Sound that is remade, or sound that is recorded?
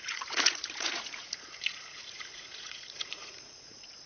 remade